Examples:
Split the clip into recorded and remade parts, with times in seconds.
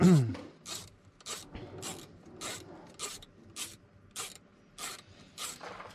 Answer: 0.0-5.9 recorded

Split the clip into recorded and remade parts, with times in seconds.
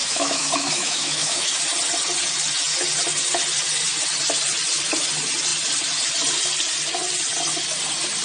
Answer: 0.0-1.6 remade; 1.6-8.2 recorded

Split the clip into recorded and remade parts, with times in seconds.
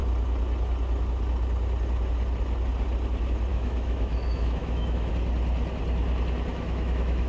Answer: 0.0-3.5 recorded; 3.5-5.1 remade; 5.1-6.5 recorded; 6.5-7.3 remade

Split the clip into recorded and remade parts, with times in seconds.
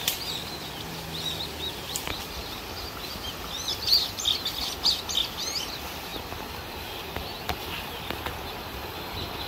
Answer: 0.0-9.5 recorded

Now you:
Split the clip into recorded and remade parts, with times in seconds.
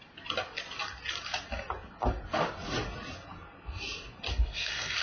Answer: 0.0-4.3 recorded; 4.3-5.0 remade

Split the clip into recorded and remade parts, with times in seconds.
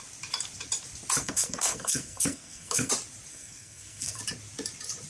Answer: 0.0-1.2 recorded; 1.2-2.9 remade; 2.9-3.3 recorded; 3.3-4.2 remade; 4.2-5.1 recorded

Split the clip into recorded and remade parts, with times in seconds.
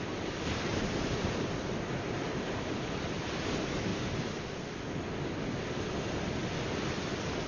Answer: 0.0-0.7 recorded; 0.7-1.6 remade; 1.6-7.5 recorded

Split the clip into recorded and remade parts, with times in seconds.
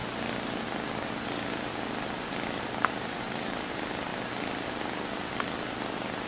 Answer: 0.0-2.6 recorded; 2.6-4.1 remade; 4.1-6.3 recorded